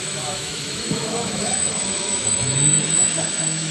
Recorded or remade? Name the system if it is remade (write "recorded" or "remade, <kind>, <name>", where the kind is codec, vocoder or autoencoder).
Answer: remade, autoencoder, DAC-VAE